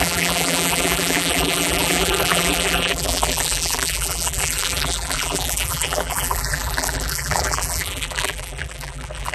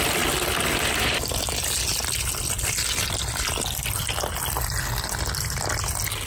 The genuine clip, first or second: second